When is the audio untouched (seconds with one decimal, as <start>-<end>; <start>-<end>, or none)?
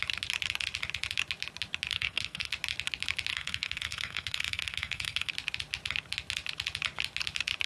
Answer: 0.0-1.9; 2.5-3.3; 5.3-7.7